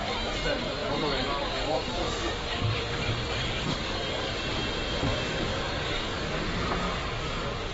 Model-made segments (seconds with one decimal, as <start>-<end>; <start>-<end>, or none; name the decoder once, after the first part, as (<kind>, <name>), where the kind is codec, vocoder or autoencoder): 0.8-4.3 (codec, DAC); 5.5-6.3; 7.0-7.7